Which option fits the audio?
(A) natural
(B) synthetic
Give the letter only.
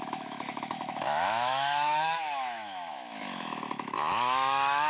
B